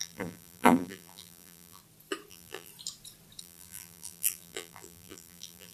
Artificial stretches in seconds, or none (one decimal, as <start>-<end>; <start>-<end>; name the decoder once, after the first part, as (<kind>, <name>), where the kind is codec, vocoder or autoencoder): 0.0-1.8 (vocoder, BigVGAN v2); 2.3-2.7; 3.4-5.7